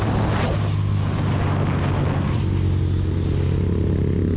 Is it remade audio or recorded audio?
recorded